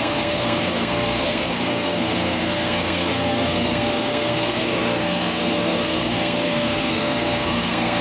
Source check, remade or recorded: remade